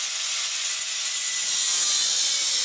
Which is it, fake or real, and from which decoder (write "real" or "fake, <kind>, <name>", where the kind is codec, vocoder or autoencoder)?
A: fake, vocoder, Vocos